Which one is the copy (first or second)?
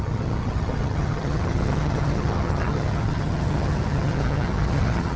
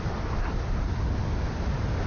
first